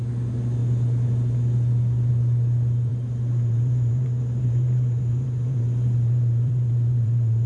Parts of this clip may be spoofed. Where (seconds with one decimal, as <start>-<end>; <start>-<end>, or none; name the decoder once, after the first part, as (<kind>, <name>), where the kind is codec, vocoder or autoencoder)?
2.9-7.5 (vocoder, BigVGAN v2)